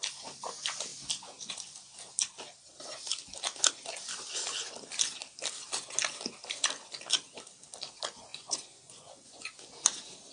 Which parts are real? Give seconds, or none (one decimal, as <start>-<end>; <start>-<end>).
0.0-8.3; 9.5-10.3